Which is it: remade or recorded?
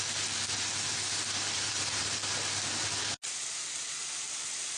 recorded